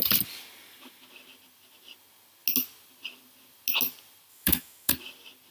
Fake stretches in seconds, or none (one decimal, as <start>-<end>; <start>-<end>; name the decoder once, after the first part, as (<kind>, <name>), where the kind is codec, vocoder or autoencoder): 4.3-4.9 (autoencoder, DAC-VAE)